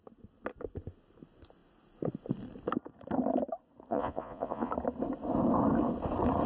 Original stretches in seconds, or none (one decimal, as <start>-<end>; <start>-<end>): 0.0-3.9; 4.7-6.5